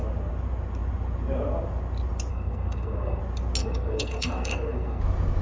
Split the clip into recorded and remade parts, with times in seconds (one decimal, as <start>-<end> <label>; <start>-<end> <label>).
0.0-2.3 recorded; 2.3-3.2 remade; 3.2-3.6 recorded; 3.6-5.0 remade; 5.0-5.4 recorded

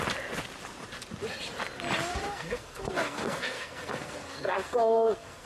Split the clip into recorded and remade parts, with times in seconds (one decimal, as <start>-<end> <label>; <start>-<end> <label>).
0.0-2.1 recorded; 2.1-5.5 remade

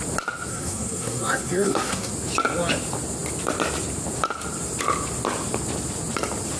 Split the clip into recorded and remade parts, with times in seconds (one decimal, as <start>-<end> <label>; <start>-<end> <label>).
0.0-0.5 recorded; 0.5-2.1 remade; 2.1-6.6 recorded

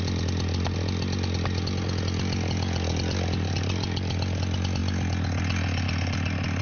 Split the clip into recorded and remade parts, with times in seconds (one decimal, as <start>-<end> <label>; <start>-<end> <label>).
0.0-6.6 recorded

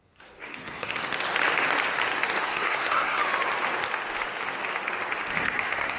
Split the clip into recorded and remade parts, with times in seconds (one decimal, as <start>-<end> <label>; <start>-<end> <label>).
0.0-1.0 remade; 1.0-2.4 recorded; 2.4-3.2 remade; 3.2-5.4 recorded; 5.4-6.0 remade